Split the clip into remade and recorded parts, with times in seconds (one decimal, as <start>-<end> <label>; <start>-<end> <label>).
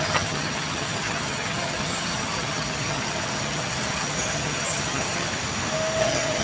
0.0-5.3 remade; 5.3-6.0 recorded; 6.0-6.4 remade